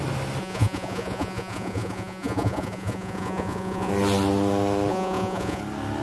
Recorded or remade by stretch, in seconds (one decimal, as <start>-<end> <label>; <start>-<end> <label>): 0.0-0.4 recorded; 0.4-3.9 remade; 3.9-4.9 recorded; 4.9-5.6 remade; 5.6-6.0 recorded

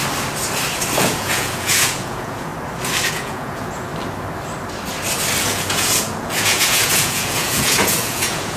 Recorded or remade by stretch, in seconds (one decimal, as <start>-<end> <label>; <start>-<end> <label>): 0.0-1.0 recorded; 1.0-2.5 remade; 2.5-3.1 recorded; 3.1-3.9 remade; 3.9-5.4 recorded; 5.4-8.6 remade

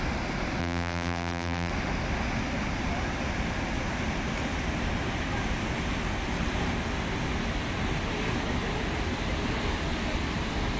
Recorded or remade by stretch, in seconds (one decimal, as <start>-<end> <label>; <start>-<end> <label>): 0.0-0.6 recorded; 0.6-1.7 remade; 1.7-10.8 recorded

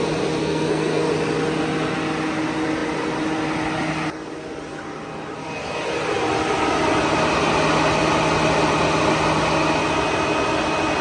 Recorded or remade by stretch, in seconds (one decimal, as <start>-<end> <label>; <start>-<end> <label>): 0.0-0.4 recorded; 0.4-1.1 remade; 1.1-11.0 recorded

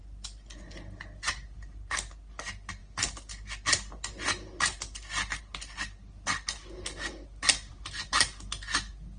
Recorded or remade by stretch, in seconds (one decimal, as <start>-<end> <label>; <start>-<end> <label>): 0.0-9.2 recorded